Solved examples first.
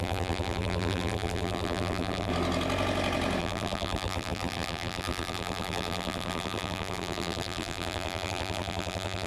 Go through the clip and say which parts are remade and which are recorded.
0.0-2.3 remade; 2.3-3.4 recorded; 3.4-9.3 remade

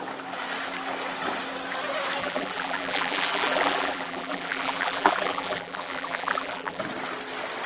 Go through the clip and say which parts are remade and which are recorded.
0.0-2.2 recorded; 2.2-6.8 remade; 6.8-7.7 recorded

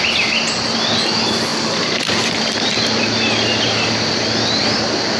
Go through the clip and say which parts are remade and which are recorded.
0.0-1.5 recorded; 1.5-4.6 remade; 4.6-5.2 recorded

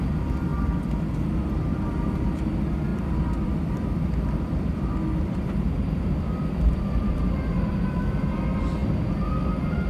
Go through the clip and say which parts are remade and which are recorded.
0.0-2.9 recorded; 2.9-7.1 remade; 7.1-9.9 recorded

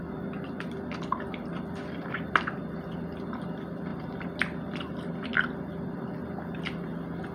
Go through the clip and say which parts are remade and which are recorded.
0.0-7.3 remade